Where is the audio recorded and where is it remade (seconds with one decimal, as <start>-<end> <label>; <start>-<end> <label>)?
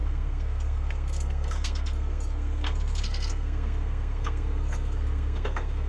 0.0-5.9 remade